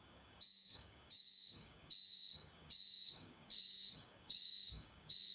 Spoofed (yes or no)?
yes